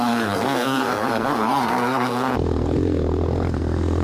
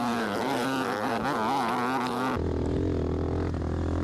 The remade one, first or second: first